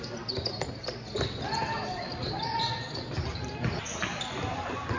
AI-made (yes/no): no